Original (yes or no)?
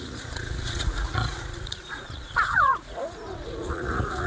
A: no